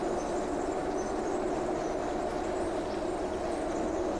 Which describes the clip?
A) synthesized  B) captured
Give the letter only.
B